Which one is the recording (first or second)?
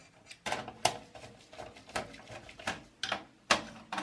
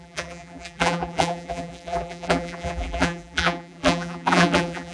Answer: first